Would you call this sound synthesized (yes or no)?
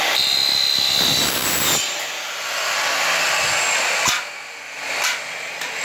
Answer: no